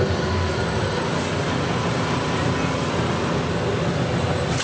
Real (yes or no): yes